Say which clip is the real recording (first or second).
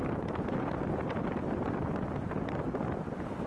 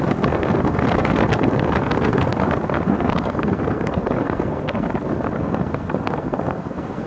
first